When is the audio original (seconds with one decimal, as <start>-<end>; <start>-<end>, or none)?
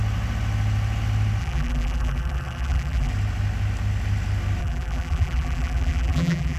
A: 0.0-1.4; 3.1-4.6